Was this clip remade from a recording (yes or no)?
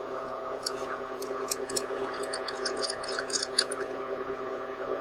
yes